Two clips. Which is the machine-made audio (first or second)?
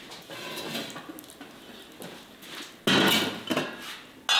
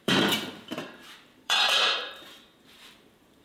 second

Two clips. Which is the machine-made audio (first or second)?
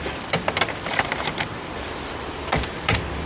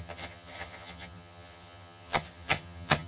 second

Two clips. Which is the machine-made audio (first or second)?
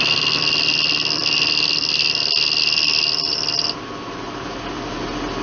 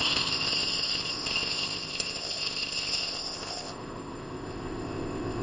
second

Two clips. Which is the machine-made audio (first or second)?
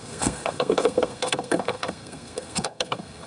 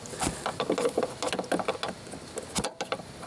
first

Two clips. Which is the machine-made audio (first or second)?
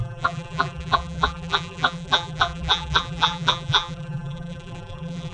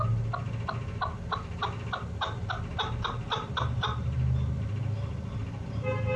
first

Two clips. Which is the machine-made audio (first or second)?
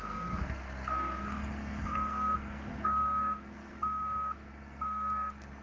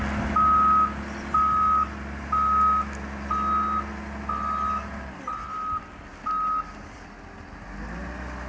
first